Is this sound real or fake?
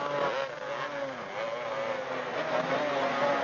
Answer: real